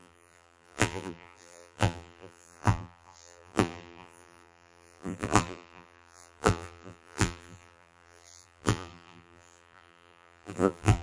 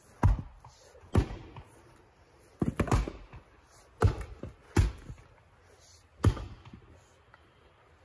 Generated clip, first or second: first